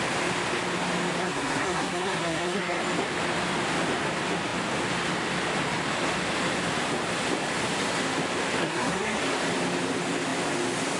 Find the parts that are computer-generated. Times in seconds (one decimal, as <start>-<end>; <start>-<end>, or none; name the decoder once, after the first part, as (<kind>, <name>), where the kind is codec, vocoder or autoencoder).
1.2-2.8 (codec, SNAC); 8.6-9.2